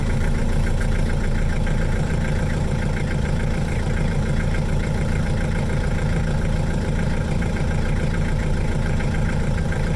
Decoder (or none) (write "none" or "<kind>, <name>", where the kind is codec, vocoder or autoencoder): vocoder, BigVGAN v2